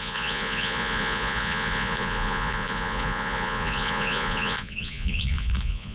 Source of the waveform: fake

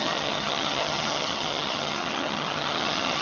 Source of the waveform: fake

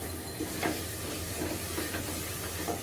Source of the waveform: fake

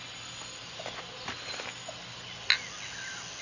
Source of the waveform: real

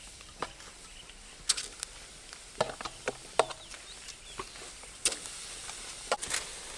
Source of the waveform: real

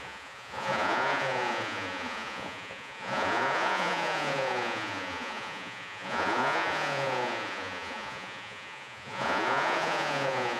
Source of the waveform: fake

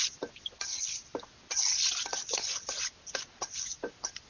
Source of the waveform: real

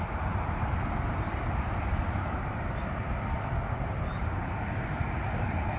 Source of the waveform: fake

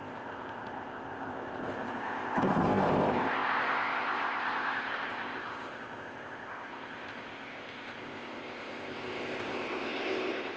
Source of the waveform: fake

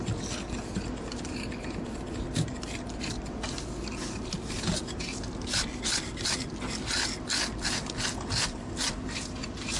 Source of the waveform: real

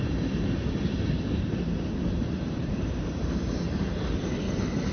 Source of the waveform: fake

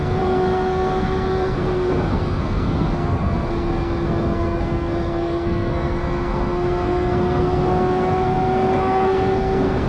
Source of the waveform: fake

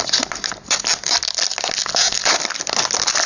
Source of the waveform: real